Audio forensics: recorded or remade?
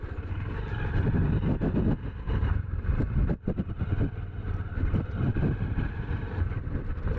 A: remade